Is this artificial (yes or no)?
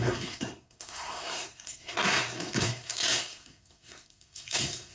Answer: yes